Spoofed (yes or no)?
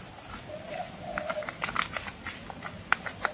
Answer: no